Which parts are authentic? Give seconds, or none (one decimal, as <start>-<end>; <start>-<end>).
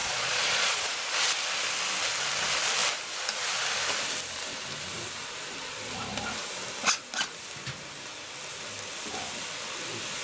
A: 1.0-10.2